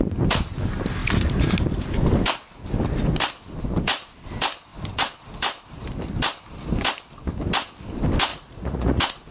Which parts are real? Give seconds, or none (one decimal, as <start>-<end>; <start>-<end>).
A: 0.0-8.3